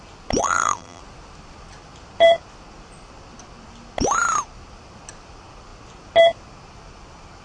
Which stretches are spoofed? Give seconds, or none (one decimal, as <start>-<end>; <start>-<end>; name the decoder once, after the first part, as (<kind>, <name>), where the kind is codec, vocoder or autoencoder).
0.4-1.0 (vocoder, BigVGAN v2)